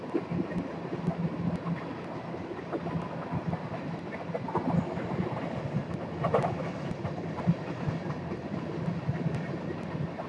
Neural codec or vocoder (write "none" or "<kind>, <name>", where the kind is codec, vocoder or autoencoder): none